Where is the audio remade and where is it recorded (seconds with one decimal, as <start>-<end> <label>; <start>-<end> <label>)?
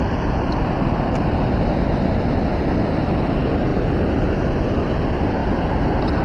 0.0-6.2 recorded